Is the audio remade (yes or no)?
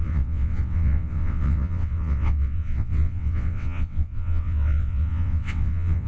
yes